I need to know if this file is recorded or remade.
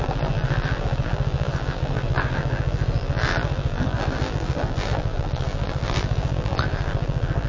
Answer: remade